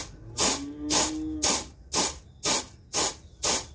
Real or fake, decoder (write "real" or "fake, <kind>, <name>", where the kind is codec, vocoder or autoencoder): real